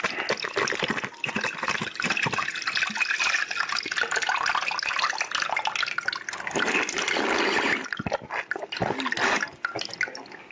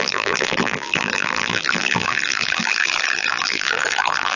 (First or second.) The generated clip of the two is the second